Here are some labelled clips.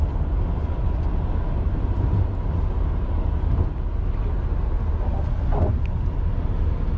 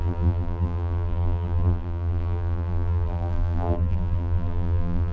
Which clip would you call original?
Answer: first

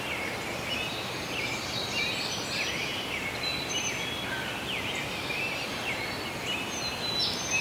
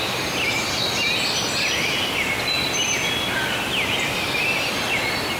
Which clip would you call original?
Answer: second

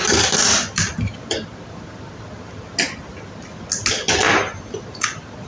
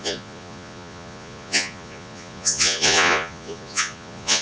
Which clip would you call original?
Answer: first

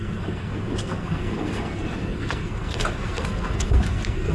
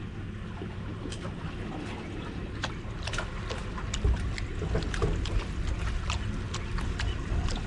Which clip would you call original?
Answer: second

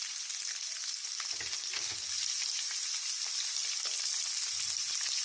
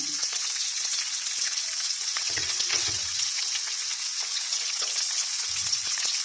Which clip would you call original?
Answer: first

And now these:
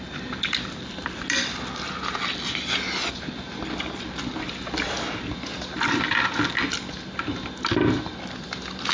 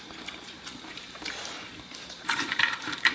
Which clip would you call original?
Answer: first